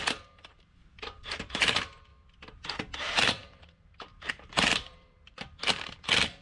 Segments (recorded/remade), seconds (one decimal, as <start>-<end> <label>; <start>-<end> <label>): 0.0-2.1 remade; 2.1-3.0 recorded; 3.0-6.4 remade